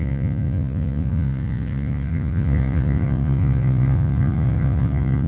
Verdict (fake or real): fake